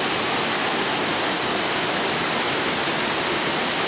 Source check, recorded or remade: recorded